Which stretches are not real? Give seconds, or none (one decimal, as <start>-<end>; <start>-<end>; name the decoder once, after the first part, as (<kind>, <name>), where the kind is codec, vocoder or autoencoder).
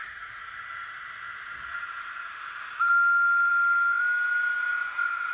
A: none